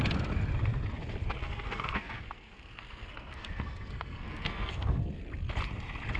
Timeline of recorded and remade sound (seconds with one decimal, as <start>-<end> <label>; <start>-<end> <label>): 0.0-1.4 recorded; 1.4-5.1 remade; 5.1-6.2 recorded